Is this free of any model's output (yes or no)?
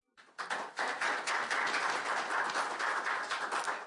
yes